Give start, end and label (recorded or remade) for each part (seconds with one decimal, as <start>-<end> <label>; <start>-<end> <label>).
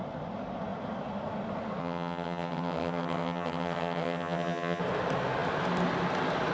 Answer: 0.0-1.8 recorded; 1.8-4.8 remade; 4.8-6.5 recorded